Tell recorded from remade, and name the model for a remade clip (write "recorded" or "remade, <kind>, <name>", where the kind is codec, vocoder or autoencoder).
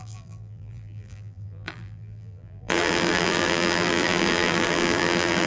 remade, vocoder, BigVGAN v2